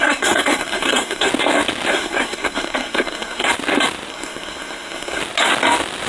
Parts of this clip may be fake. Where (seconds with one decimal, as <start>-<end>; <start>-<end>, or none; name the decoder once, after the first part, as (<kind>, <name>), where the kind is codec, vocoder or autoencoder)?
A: 0.0-1.3 (codec, SNAC); 1.9-3.5; 4.1-5.2